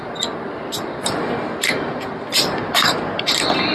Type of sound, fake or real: real